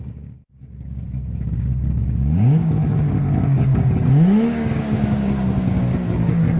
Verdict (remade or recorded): remade